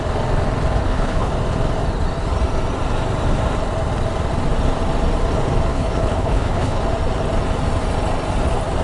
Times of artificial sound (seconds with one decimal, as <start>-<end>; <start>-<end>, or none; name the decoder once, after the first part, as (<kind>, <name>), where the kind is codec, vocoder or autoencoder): 0.8-1.3 (codec, HILCodec); 5.7-6.8